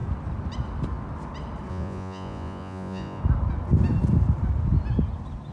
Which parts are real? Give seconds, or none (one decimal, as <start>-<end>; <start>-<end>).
0.0-1.7; 3.2-5.5